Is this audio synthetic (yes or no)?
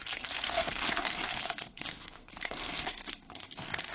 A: yes